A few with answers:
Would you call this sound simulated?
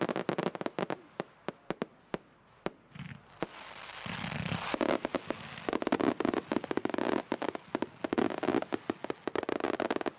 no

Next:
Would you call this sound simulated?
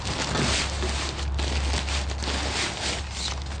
no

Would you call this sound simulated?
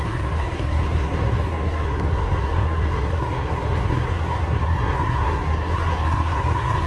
yes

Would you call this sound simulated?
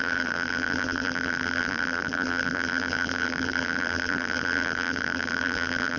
yes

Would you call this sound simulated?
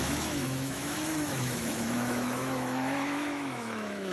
yes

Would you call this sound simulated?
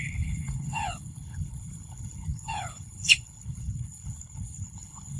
yes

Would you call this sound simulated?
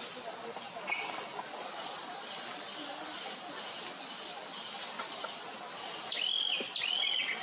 no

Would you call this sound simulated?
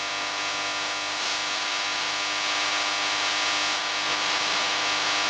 no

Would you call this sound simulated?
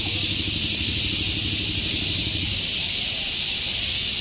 no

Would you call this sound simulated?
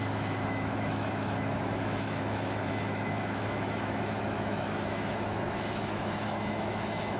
yes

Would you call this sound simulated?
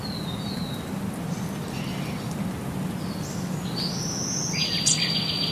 no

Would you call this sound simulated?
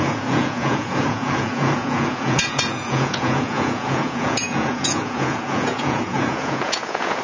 yes